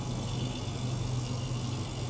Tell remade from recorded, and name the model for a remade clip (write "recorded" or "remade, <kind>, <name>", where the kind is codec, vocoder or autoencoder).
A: recorded